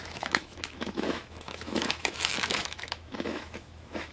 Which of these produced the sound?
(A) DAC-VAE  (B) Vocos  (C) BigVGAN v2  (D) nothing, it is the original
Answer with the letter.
A